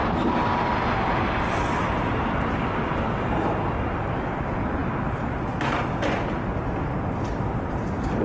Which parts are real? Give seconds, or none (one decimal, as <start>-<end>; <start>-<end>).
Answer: 0.0-8.2